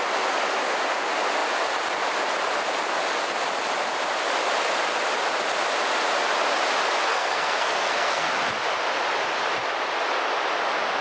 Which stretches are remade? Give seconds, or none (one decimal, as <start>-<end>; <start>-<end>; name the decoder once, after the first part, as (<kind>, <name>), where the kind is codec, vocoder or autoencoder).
7.1-8.3 (codec, SNAC)